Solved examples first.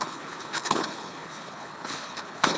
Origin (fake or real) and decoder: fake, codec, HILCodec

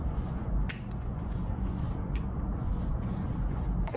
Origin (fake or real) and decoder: fake, vocoder, Vocos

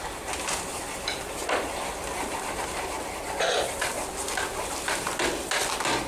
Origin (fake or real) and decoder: real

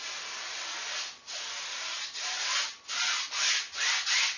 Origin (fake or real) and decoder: real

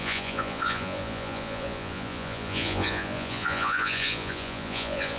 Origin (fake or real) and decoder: fake, vocoder, Vocos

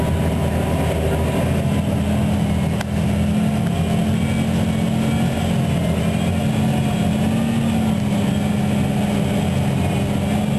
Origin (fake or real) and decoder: real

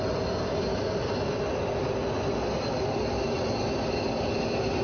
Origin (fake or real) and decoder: real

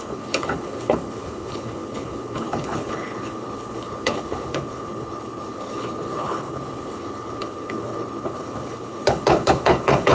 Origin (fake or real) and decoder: fake, codec, HILCodec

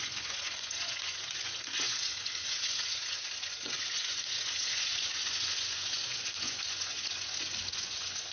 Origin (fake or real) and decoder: fake, vocoder, Vocos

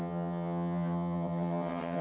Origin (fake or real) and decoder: fake, vocoder, HiFi-GAN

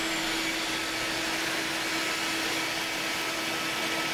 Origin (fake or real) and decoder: real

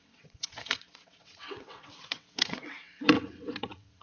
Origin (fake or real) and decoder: fake, vocoder, WaveNeXt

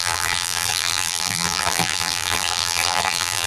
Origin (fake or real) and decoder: fake, vocoder, BigVGAN v2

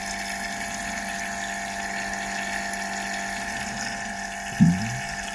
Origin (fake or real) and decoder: real